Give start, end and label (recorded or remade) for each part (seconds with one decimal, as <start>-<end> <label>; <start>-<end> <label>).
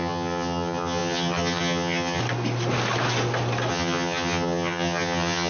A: 0.0-2.2 remade; 2.2-3.7 recorded; 3.7-5.5 remade